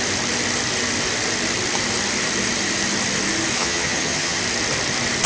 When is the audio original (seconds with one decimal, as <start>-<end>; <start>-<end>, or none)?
0.0-3.6; 4.4-5.3